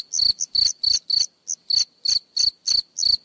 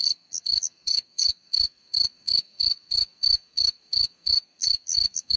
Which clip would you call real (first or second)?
first